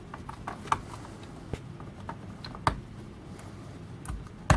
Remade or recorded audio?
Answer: recorded